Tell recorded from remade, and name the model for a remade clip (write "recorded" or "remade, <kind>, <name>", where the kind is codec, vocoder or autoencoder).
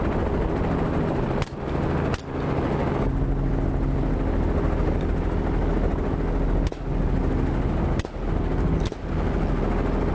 recorded